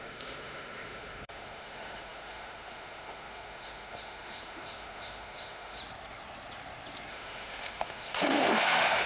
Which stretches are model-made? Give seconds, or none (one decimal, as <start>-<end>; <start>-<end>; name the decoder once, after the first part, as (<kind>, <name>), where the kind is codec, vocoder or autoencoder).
0.0-5.8 (autoencoder, DAC-VAE); 7.1-9.1